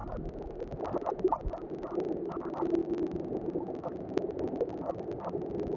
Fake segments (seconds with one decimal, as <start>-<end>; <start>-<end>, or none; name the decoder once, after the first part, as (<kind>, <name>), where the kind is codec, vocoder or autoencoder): none